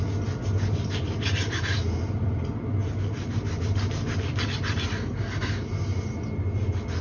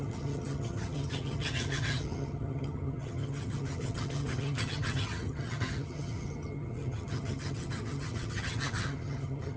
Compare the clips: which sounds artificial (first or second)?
second